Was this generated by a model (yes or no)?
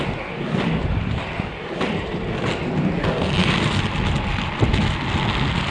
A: no